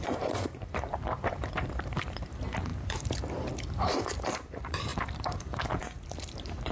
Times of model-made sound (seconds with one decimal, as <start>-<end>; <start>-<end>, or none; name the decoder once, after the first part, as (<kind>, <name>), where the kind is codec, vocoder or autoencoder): 0.0-6.7 (vocoder, BigVGAN v2)